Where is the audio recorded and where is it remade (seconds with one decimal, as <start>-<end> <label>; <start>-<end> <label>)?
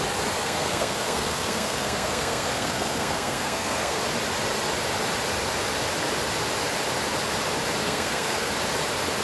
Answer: 0.0-0.4 recorded; 0.4-4.0 remade; 4.0-7.8 recorded; 7.8-8.5 remade; 8.5-9.2 recorded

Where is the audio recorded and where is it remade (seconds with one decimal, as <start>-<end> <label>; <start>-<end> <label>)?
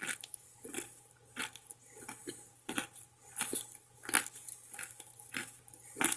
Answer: 0.0-6.2 recorded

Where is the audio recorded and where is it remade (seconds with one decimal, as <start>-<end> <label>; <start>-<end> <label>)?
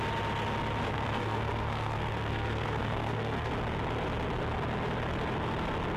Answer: 0.0-0.8 recorded; 0.8-3.5 remade; 3.5-6.0 recorded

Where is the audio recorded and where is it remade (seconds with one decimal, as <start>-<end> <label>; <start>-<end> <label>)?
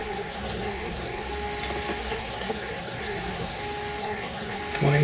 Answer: 0.0-1.3 remade; 1.3-2.0 recorded; 2.0-3.6 remade; 3.6-4.0 recorded; 4.0-4.6 remade; 4.6-5.0 recorded